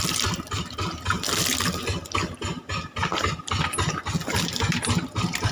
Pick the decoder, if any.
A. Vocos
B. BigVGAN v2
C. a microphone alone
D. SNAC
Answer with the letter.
C